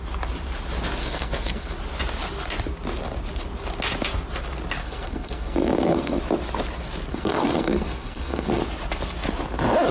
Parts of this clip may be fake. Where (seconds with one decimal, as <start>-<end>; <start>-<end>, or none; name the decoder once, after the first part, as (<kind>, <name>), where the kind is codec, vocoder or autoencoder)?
1.0-1.7 (codec, SNAC); 4.8-6.2; 7.1-8.6